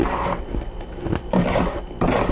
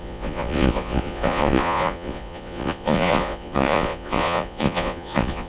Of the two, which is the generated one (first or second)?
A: second